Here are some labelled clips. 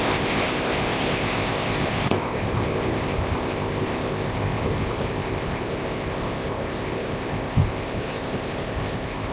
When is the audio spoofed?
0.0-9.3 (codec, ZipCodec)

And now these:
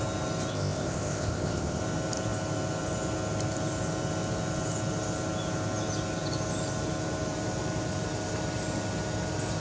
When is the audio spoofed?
0.5-1.8 (codec, ZipCodec)

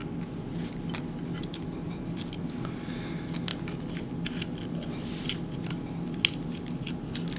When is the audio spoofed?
none

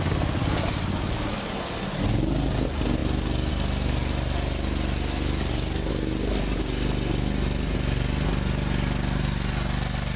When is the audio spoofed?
none

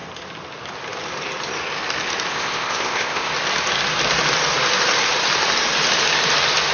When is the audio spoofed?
2.3-3.3 (codec, ZipCodec)

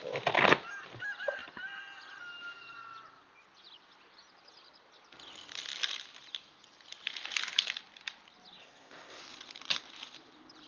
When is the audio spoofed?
8.6-9.2 (codec, ZipCodec)

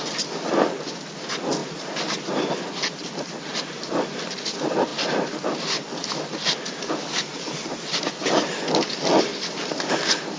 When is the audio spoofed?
none

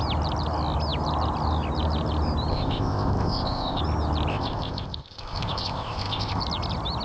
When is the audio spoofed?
2.5-3.8 (codec, ZipCodec); 4.3-6.4